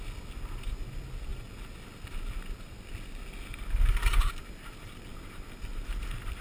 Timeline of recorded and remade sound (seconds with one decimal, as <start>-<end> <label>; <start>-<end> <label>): 0.0-6.4 recorded